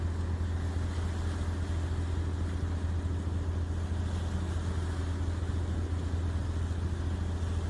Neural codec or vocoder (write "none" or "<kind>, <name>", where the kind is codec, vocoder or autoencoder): none